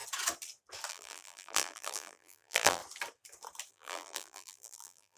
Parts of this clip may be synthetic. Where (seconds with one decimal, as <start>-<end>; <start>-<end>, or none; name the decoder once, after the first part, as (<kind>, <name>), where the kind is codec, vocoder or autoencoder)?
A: 0.9-2.8 (vocoder, BigVGAN v2); 3.7-5.2